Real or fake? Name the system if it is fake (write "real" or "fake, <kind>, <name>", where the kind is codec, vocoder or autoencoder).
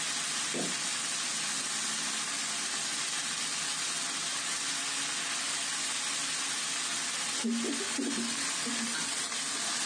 real